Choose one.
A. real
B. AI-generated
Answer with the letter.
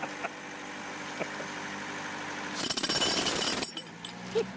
A